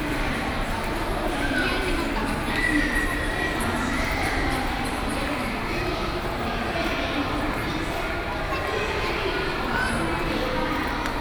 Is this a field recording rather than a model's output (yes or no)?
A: yes